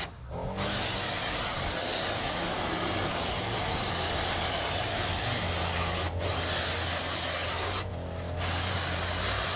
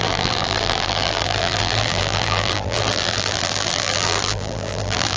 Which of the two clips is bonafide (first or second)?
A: first